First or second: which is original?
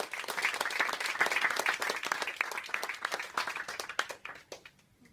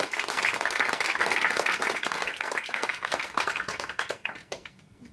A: first